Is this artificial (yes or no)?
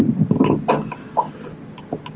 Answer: no